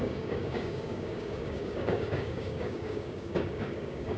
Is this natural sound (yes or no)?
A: no